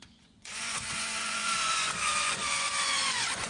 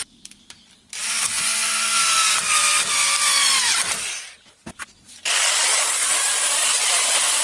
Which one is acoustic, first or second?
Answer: second